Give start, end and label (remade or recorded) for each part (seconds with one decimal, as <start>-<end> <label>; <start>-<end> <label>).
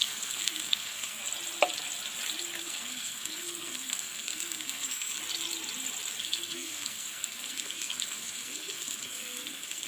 0.0-1.2 remade; 1.2-2.6 recorded; 2.6-5.2 remade; 5.2-6.2 recorded; 6.2-9.9 remade